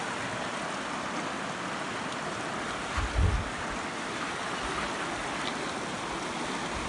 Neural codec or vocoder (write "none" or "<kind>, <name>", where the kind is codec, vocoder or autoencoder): none